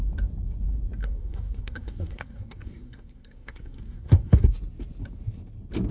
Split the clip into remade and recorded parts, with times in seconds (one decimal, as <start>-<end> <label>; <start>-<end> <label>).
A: 0.0-1.0 recorded; 1.0-4.5 remade; 4.5-5.9 recorded